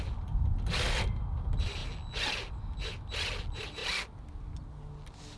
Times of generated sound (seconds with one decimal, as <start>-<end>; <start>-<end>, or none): none